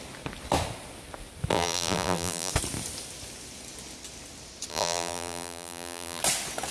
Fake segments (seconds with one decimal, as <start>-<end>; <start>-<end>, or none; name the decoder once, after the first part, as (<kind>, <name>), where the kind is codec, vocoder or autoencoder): 1.5-2.5 (vocoder, BigVGAN v2); 4.7-6.2